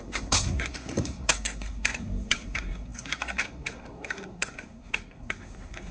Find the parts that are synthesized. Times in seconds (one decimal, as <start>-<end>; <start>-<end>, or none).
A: 0.0-5.9